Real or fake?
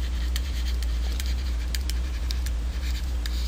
fake